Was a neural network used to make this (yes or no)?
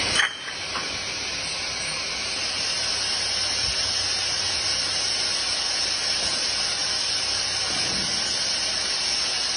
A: no